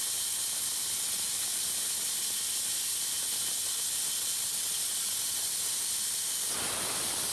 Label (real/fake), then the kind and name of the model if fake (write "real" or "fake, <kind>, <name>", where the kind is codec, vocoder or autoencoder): real